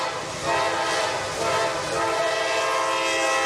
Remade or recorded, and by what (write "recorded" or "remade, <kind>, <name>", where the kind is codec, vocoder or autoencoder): recorded